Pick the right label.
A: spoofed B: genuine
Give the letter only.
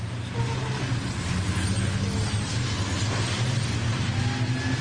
B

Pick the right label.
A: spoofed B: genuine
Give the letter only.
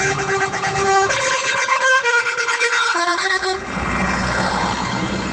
A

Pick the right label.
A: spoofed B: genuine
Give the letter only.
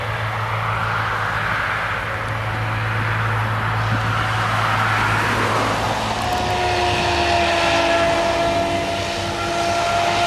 B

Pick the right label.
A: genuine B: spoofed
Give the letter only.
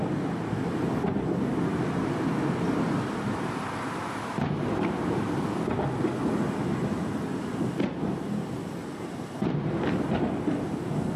A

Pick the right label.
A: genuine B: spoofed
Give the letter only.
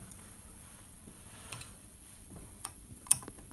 B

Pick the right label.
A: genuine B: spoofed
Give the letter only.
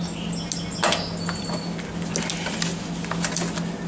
A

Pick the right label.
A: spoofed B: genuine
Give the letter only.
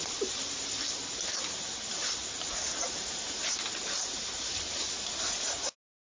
B